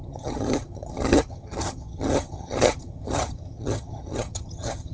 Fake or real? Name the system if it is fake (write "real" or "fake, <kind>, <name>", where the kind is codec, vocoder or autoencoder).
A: fake, vocoder, HiFi-GAN